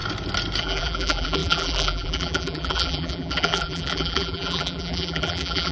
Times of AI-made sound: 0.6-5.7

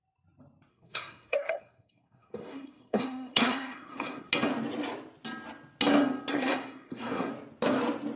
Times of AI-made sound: 0.7-4.3; 6.3-7.3